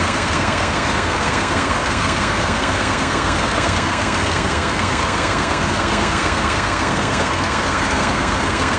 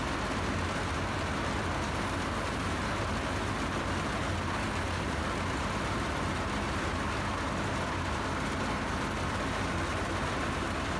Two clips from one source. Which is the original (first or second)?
second